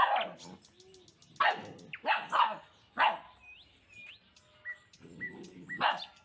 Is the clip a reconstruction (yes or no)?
no